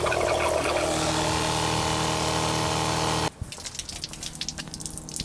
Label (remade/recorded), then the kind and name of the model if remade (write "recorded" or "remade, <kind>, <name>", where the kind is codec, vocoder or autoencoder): recorded